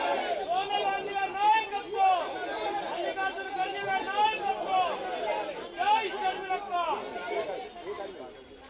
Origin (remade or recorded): recorded